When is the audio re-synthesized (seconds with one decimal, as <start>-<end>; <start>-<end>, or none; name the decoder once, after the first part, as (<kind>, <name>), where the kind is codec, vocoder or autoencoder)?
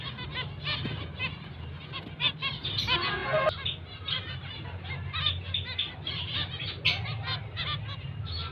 none